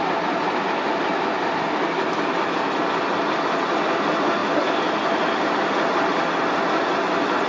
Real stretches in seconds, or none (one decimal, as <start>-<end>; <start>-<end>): 0.0-7.5

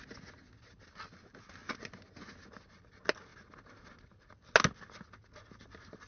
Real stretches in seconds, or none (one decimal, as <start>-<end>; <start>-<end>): 0.0-6.1

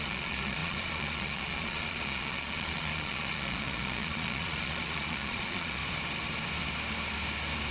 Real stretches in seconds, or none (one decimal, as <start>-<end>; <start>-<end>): 5.8-7.7

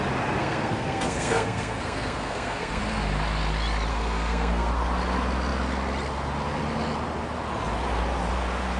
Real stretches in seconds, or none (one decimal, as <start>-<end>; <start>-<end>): 0.0-0.4; 2.8-3.9; 4.7-8.8

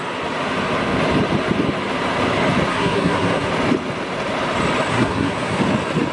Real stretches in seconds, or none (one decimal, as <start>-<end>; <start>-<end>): 0.0-2.7; 3.5-4.9; 5.6-6.1